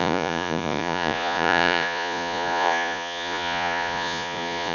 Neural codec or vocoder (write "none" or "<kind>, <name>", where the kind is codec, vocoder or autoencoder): vocoder, Vocos